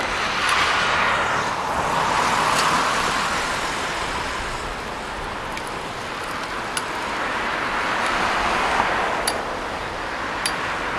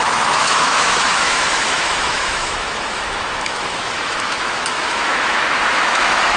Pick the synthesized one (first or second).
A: second